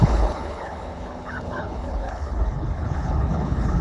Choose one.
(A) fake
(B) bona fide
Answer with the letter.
A